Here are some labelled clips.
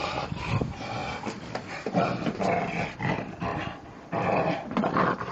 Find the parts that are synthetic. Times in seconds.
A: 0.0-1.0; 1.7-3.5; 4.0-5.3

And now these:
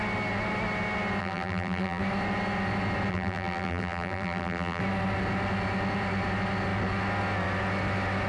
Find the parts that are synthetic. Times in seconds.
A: 1.2-2.0; 3.1-4.8

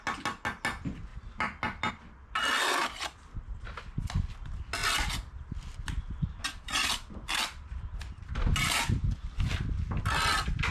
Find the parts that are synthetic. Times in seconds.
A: none

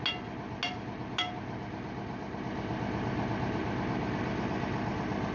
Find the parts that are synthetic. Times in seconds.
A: none

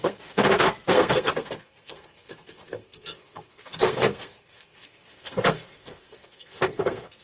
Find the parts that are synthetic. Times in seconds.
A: 0.0-7.2

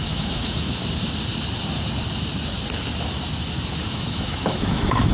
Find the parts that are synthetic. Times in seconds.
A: 0.0-0.8; 3.9-5.1

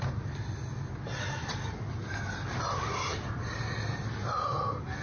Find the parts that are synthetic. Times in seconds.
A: none